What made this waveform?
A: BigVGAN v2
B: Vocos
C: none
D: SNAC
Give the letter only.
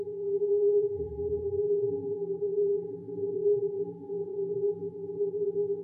A